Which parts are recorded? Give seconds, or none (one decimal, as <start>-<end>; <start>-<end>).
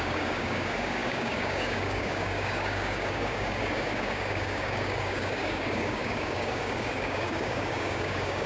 none